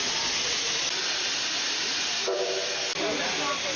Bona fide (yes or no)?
yes